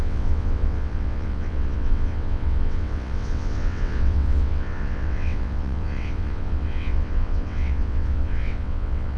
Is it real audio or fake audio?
fake